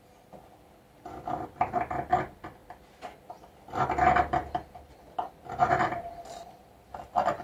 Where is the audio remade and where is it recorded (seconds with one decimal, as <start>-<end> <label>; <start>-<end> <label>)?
0.0-7.4 recorded